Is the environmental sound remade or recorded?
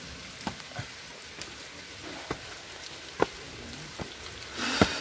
recorded